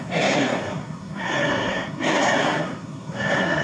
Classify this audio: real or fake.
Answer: fake